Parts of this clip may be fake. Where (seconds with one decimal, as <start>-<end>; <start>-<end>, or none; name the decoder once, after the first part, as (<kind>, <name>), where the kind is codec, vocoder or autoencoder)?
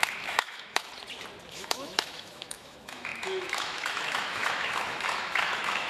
0.0-0.9 (autoencoder, DAC-VAE); 1.5-5.9